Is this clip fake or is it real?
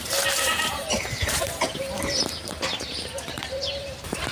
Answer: fake